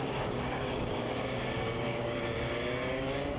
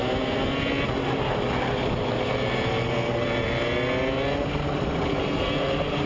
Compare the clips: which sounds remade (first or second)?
first